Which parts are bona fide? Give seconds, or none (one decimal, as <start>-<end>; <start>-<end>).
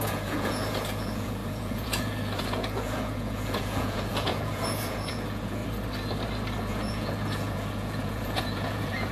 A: 5.6-6.6